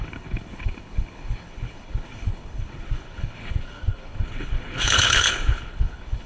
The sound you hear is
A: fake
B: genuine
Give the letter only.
A